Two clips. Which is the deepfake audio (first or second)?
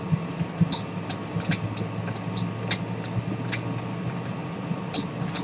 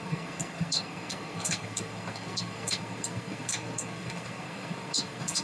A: second